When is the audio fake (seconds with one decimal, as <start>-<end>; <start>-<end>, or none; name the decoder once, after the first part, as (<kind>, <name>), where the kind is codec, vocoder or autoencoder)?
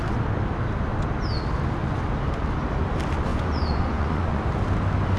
3.3-4.4 (vocoder, Vocos)